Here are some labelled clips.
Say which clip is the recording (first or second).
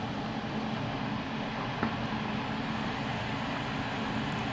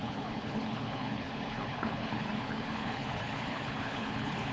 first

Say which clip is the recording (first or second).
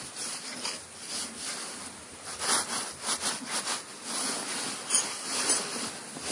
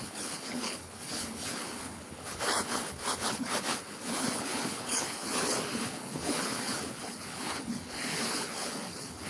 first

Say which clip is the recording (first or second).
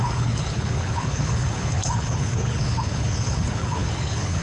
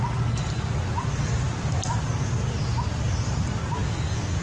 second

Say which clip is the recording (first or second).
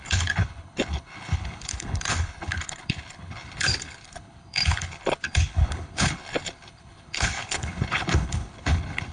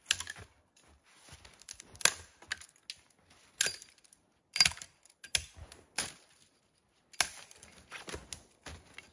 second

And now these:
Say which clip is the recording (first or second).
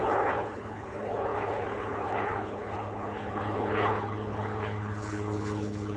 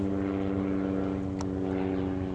second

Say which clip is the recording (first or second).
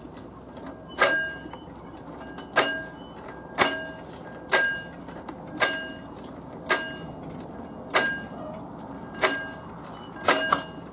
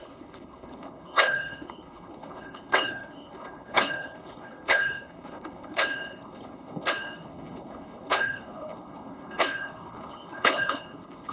first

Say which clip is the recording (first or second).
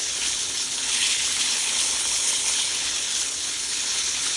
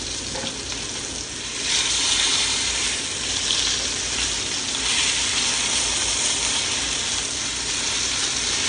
second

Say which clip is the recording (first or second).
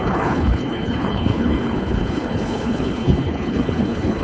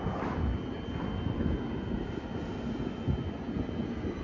second